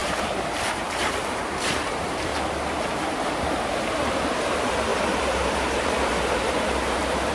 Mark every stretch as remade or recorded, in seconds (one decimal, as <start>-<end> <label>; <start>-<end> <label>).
0.0-2.3 remade; 2.3-4.5 recorded; 4.5-7.3 remade